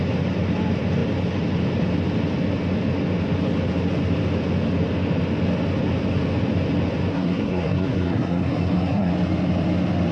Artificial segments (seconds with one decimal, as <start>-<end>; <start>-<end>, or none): 7.1-9.1